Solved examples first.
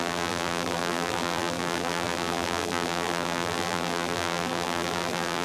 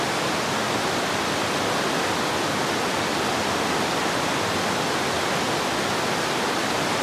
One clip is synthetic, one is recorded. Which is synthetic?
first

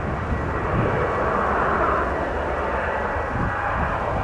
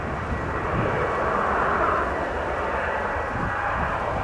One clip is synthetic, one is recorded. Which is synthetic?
second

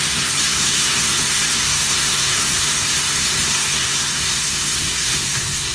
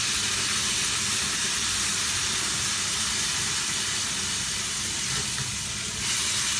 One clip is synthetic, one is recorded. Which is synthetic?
first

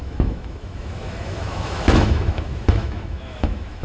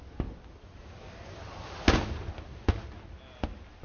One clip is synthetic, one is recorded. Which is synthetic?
first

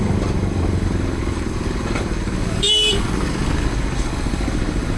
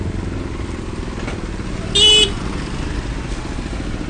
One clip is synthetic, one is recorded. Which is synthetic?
first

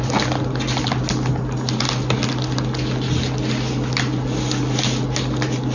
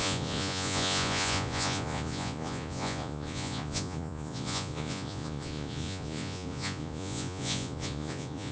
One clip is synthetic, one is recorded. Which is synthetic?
second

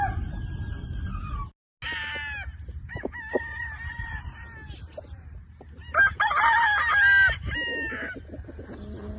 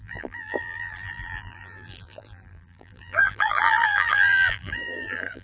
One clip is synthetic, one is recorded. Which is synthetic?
second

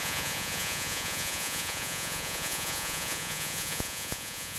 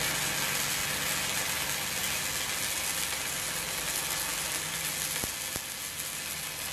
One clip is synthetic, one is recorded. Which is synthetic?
first